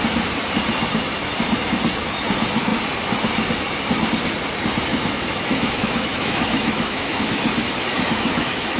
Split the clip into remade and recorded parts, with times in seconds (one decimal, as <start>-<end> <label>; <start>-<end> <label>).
0.0-4.9 recorded; 4.9-7.2 remade; 7.2-7.9 recorded; 7.9-8.8 remade